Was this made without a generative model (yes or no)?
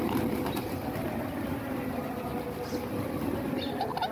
yes